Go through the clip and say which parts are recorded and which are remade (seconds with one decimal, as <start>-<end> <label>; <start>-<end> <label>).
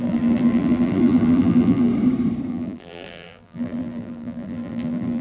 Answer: 0.0-1.9 remade; 1.9-2.5 recorded; 2.5-5.2 remade